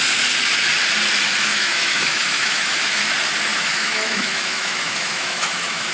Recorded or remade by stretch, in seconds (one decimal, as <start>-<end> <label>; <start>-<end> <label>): 0.0-1.5 recorded; 1.5-3.0 remade; 3.0-3.5 recorded; 3.5-5.9 remade